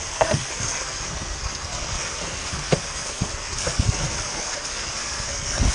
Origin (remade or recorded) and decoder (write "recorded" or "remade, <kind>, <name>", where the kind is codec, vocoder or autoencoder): remade, codec, SNAC